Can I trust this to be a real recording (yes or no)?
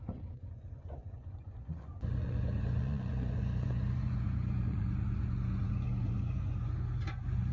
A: no